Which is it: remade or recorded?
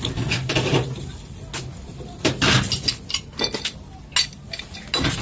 recorded